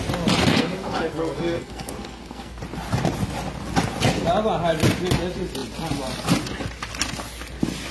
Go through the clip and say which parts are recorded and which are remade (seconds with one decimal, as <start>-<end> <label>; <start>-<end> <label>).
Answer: 0.0-0.5 recorded; 0.5-2.6 remade; 2.6-7.9 recorded